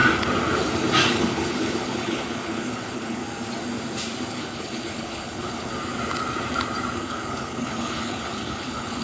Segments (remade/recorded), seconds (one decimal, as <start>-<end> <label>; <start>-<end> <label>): 0.0-1.1 recorded; 1.1-3.2 remade; 3.2-4.3 recorded; 4.3-5.7 remade; 5.7-7.0 recorded; 7.0-9.0 remade